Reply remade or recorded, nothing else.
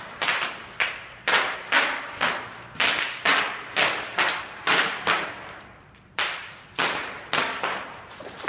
recorded